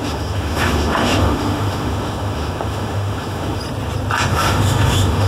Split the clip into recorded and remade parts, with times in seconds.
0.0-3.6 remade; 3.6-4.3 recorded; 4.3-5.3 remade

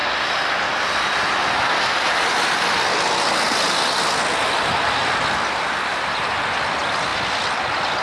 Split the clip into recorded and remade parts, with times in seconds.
0.0-8.0 recorded

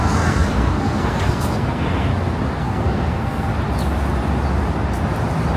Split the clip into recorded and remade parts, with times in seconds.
0.0-2.1 remade; 2.1-2.6 recorded; 2.6-3.5 remade; 3.5-5.6 recorded

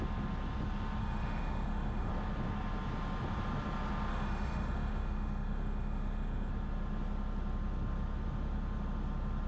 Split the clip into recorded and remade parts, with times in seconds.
0.0-1.0 recorded; 1.0-2.1 remade; 2.1-4.1 recorded; 4.1-6.5 remade; 6.5-9.5 recorded

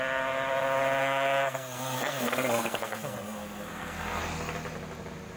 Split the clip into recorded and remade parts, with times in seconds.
0.0-1.0 recorded; 1.0-4.2 remade; 4.2-5.4 recorded

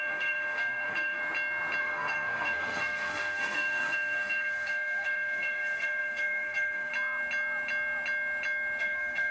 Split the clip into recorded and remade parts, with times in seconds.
0.0-1.2 remade; 1.2-1.8 recorded; 1.8-6.9 remade; 6.9-8.8 recorded; 8.8-9.3 remade

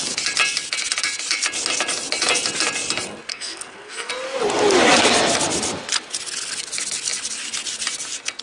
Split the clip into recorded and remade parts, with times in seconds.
0.0-3.3 recorded; 3.3-4.1 remade; 4.1-8.4 recorded

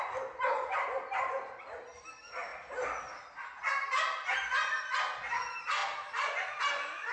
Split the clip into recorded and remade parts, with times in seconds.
0.0-7.1 recorded